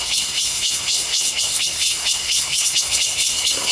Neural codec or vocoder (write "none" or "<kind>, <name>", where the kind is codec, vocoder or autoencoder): codec, SNAC